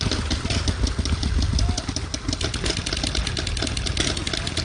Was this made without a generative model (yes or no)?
yes